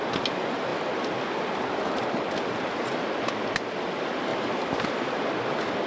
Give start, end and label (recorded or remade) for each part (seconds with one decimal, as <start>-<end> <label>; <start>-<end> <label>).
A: 0.0-5.9 recorded